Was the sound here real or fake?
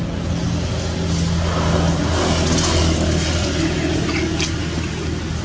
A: real